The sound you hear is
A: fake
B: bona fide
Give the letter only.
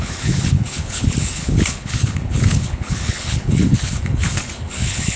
A